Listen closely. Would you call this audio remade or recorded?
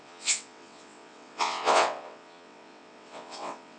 remade